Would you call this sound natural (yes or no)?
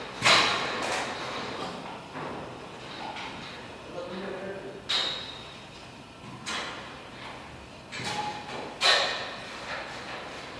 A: yes